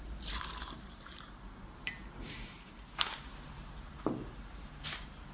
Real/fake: fake